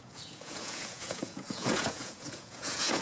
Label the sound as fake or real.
fake